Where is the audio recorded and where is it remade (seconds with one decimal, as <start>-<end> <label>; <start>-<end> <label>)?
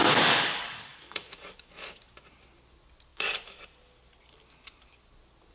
0.0-2.0 remade; 2.0-3.1 recorded; 3.1-3.6 remade; 3.6-5.5 recorded